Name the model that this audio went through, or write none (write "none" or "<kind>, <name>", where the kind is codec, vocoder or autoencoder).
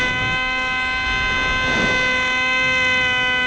none